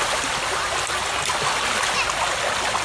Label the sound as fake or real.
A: real